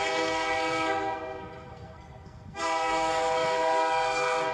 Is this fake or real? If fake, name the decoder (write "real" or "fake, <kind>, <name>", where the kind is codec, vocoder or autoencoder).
fake, codec, SNAC